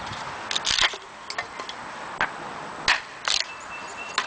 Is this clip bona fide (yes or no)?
yes